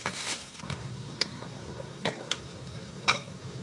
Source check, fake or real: fake